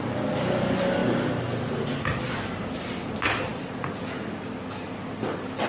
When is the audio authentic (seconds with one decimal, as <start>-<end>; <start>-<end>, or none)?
0.0-5.7